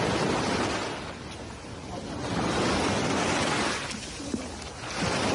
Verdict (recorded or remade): recorded